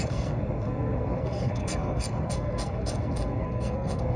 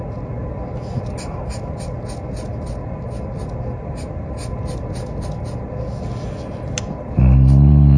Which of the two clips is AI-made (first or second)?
first